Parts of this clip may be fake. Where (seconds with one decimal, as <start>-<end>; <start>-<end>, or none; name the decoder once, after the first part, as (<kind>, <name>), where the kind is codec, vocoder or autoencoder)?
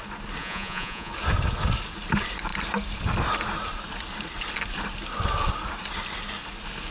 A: 0.4-1.1 (vocoder, Vocos)